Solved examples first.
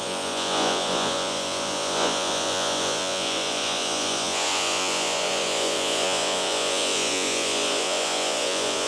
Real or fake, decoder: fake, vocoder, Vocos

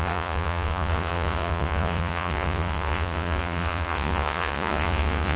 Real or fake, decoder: fake, vocoder, Vocos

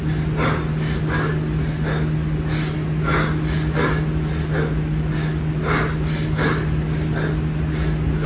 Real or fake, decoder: real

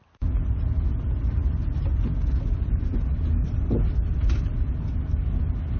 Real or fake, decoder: real